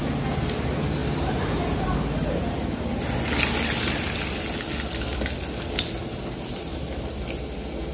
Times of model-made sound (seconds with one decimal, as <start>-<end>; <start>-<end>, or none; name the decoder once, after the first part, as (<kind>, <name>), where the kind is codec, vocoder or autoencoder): 1.0-2.4 (vocoder, BigVGAN v2); 6.0-6.5